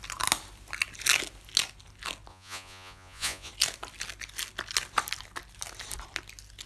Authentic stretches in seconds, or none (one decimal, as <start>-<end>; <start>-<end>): 0.0-2.3; 3.5-6.7